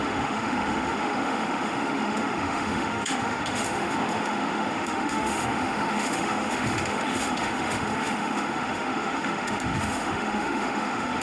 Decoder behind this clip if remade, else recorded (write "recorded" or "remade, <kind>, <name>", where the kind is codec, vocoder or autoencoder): remade, autoencoder, DAC-VAE